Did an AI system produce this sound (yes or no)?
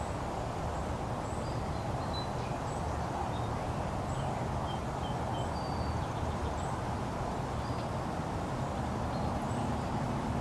yes